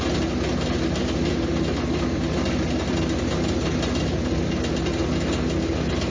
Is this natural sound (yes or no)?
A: yes